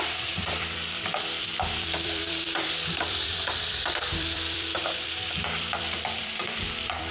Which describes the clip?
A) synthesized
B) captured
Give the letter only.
A